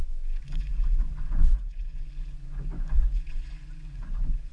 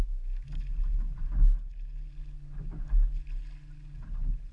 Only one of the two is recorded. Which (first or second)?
second